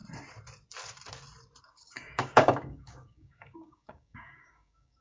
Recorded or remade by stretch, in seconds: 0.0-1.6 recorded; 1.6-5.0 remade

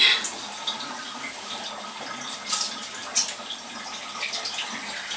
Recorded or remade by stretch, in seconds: 0.0-5.2 recorded